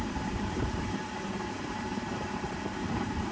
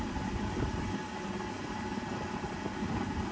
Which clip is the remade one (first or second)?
first